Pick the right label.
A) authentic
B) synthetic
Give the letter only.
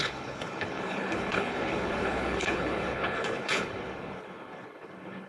B